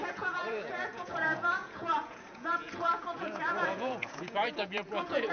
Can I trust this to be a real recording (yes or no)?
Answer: no